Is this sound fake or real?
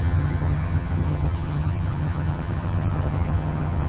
fake